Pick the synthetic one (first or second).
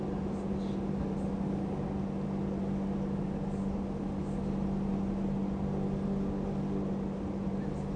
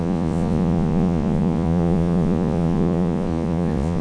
second